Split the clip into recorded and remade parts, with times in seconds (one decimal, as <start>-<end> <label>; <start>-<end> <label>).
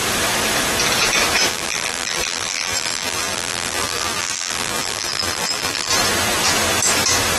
0.0-1.5 recorded; 1.5-5.9 remade; 5.9-7.4 recorded